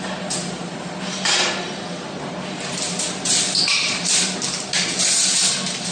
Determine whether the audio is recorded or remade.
recorded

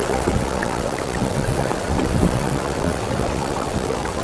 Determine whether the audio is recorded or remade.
remade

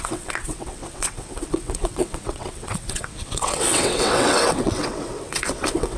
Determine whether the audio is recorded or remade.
remade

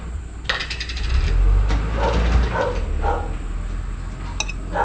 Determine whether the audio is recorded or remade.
recorded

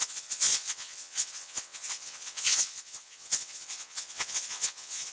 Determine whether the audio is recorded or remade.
remade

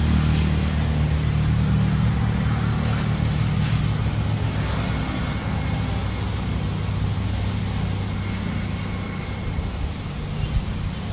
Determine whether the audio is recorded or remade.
recorded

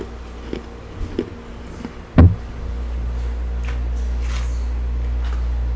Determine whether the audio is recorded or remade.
recorded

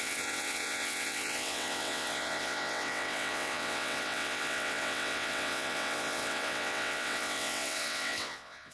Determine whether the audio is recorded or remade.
remade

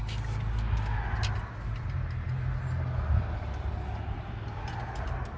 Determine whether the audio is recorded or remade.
recorded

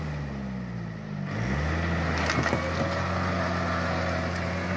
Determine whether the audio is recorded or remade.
recorded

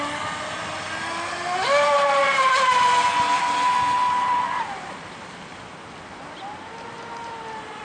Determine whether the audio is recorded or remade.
recorded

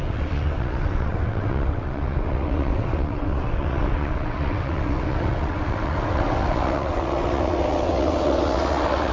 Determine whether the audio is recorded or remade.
remade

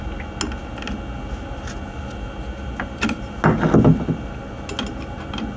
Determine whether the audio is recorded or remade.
recorded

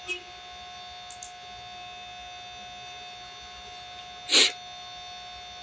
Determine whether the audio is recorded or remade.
recorded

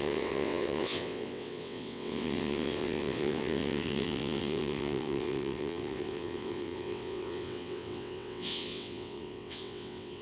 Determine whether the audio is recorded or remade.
remade